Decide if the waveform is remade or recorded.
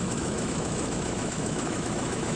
remade